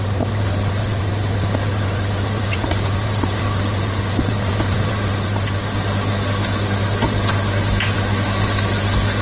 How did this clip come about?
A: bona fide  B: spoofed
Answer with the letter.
A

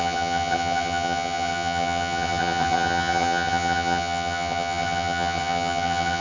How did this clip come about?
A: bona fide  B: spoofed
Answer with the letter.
B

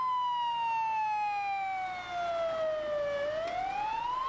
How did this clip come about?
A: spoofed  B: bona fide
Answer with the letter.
B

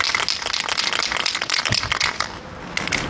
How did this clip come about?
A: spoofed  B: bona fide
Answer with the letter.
B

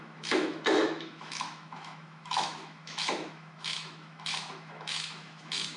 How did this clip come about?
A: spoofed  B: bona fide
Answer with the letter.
A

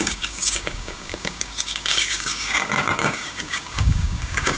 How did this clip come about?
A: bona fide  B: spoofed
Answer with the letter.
B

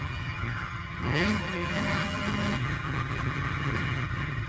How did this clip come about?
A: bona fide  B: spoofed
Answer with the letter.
B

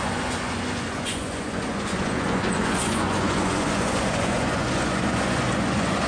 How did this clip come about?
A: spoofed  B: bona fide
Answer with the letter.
A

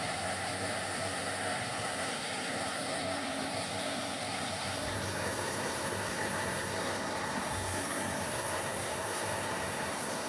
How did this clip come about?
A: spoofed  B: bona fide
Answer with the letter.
A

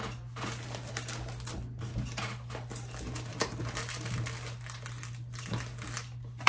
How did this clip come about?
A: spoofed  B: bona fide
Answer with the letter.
B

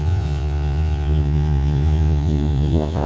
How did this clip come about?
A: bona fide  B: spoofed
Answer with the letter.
B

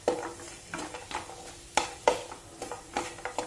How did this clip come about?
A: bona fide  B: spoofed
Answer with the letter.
A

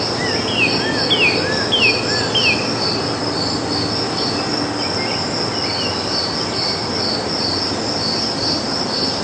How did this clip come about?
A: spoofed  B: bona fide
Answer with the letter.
B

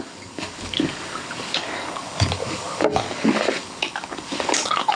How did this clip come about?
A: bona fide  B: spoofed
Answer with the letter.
B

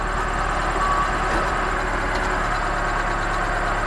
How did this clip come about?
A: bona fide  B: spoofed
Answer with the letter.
A